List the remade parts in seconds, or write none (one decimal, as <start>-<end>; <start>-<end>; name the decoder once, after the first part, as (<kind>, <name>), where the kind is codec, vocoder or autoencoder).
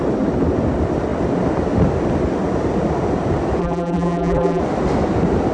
3.6-4.6 (vocoder, BigVGAN v2)